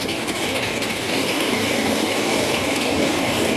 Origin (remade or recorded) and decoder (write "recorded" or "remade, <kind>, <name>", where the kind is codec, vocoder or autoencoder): remade, codec, DAC